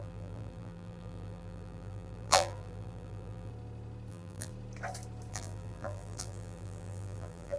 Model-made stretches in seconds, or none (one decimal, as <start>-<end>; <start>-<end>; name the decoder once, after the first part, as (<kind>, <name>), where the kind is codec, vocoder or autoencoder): 0.0-3.5 (vocoder, BigVGAN v2); 4.1-4.5; 5.3-7.6